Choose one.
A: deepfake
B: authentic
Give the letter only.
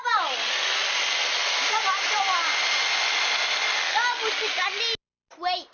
B